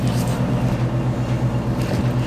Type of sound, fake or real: real